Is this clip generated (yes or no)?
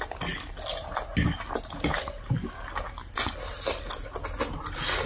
no